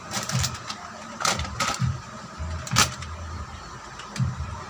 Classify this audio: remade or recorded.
remade